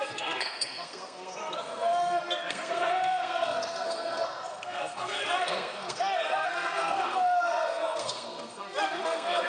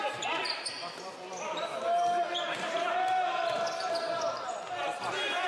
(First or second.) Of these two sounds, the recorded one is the second